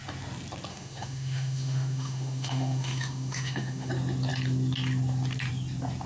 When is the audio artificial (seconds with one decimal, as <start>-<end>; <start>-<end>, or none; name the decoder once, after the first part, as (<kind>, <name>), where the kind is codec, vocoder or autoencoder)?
0.7-3.9 (autoencoder, DAC-VAE)